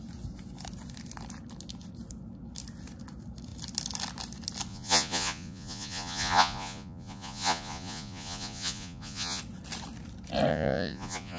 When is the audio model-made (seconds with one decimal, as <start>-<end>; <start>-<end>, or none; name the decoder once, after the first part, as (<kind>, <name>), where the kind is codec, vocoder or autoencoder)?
4.7-9.4 (vocoder, Vocos); 10.5-11.4